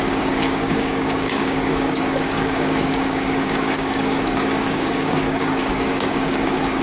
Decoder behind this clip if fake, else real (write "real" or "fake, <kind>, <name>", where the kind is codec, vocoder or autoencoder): fake, codec, DAC